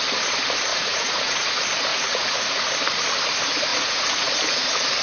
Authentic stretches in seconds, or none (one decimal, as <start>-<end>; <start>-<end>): 0.0-0.7; 1.5-1.9; 2.6-3.7; 4.3-5.0